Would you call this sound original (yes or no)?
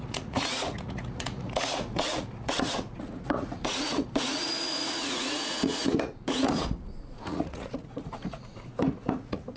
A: no